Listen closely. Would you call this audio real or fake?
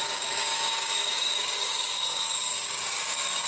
fake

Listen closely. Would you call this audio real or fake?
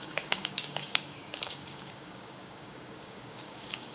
fake